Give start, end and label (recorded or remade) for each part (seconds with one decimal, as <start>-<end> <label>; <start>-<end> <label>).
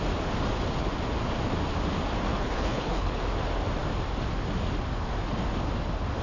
0.0-2.3 recorded; 2.3-3.2 remade; 3.2-6.2 recorded